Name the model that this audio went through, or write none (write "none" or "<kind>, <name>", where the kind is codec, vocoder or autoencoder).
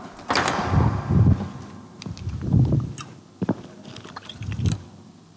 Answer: none